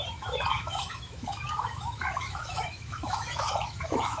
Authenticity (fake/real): fake